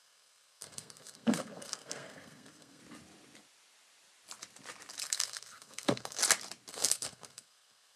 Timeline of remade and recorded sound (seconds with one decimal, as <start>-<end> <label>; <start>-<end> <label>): 0.0-2.8 remade; 2.8-5.0 recorded; 5.0-6.2 remade; 6.2-6.7 recorded; 6.7-8.0 remade